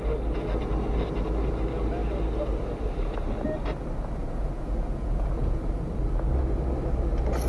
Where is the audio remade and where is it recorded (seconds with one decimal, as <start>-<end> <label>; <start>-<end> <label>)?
0.0-4.2 recorded; 4.2-5.7 remade; 5.7-7.5 recorded